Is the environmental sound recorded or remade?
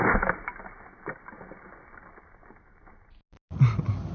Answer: recorded